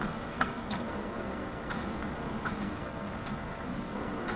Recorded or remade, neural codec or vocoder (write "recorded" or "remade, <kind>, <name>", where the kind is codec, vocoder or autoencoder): remade, codec, SNAC